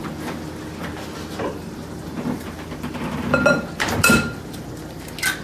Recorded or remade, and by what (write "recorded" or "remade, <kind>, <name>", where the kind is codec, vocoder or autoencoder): recorded